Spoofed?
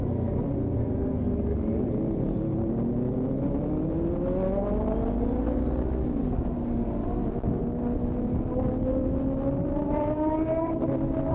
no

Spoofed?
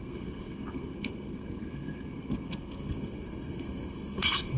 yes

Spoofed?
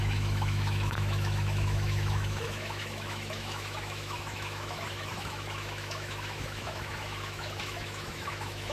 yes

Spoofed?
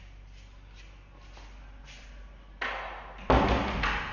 no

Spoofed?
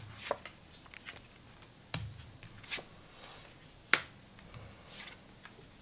no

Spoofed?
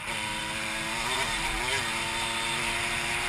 yes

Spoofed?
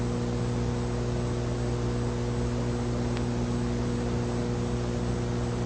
no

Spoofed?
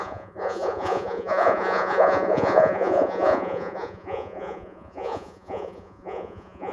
yes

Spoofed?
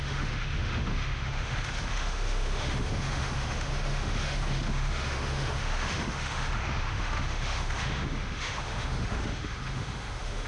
yes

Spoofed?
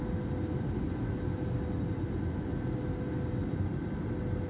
no